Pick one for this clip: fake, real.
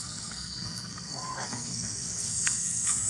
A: fake